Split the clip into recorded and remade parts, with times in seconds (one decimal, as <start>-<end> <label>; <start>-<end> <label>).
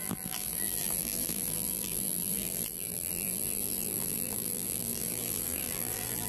0.0-6.3 remade